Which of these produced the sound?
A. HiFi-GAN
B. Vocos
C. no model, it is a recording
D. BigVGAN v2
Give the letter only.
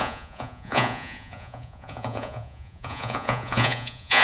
B